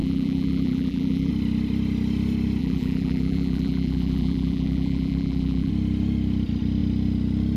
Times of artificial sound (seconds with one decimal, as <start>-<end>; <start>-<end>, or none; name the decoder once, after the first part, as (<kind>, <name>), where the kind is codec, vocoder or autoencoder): 0.0-1.3 (vocoder, BigVGAN v2); 2.6-5.7

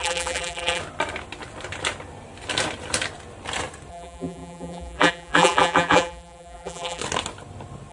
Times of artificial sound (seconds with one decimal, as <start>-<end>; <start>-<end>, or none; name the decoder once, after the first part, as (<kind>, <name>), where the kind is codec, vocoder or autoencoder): 0.0-0.8 (vocoder, BigVGAN v2); 3.9-7.0

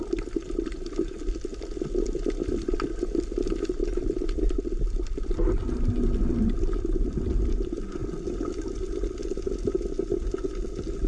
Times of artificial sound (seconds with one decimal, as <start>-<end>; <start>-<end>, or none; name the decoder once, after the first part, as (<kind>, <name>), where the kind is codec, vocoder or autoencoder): none

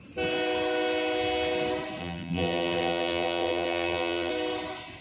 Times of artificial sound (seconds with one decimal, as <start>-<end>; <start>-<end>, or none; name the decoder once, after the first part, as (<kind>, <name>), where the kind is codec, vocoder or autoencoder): 2.0-4.3 (vocoder, BigVGAN v2)

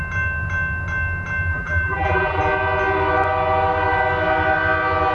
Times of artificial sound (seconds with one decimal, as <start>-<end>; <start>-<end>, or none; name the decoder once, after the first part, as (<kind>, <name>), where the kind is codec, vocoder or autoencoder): 1.5-2.4 (vocoder, BigVGAN v2)